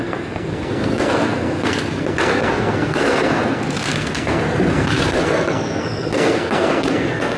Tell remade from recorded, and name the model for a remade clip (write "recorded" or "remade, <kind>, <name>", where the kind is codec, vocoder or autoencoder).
remade, codec, SNAC